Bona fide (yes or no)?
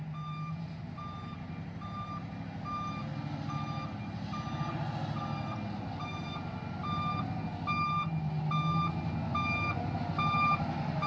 yes